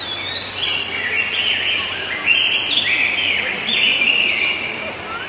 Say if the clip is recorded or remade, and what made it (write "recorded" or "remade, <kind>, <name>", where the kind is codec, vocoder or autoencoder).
remade, vocoder, BigVGAN v2